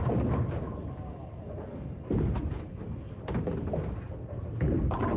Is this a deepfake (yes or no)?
no